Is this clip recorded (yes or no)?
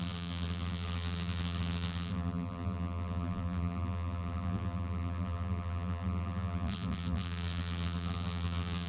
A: no